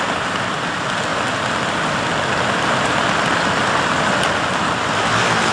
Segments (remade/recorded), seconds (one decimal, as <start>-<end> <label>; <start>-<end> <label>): 0.0-5.5 recorded